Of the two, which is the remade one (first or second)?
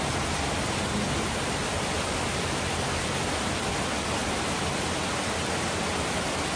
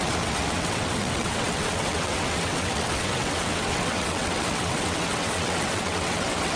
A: second